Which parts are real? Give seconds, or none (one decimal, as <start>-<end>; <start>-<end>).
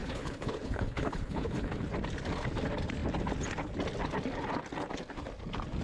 1.9-5.8